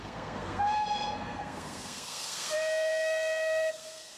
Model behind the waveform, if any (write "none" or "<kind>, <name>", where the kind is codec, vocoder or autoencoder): codec, SNAC